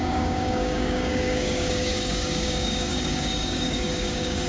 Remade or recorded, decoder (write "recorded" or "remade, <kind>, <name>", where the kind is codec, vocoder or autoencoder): remade, codec, DAC